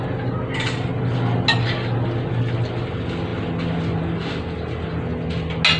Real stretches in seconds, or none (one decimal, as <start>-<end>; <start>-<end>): 0.0-5.8